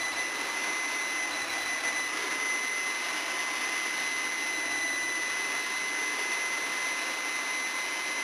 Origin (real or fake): real